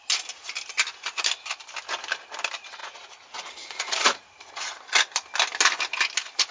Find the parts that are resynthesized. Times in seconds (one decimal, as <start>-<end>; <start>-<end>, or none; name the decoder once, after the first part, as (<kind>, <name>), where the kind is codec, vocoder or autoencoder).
2.8-4.5 (vocoder, Vocos)